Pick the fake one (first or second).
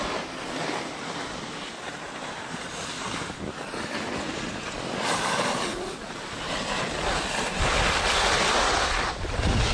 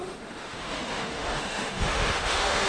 second